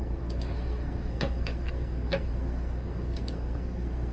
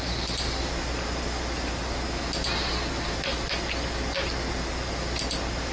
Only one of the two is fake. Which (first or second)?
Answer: first